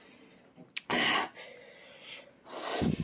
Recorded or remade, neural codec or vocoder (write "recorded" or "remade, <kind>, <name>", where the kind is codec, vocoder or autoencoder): recorded